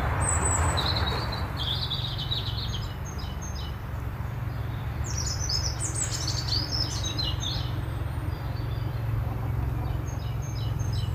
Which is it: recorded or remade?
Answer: remade